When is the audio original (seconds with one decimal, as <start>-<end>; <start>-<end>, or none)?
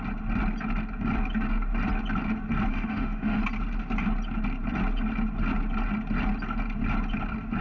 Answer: 0.0-2.7; 3.4-7.6